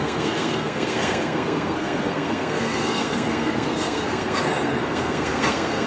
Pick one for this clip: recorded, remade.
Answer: remade